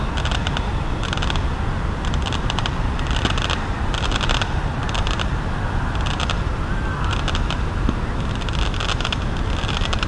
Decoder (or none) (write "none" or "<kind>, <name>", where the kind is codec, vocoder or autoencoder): none